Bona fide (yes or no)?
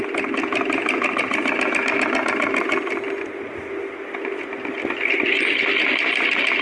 yes